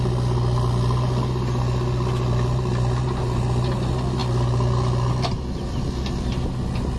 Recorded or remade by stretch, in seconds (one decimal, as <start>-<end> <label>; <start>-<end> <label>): 0.0-7.0 recorded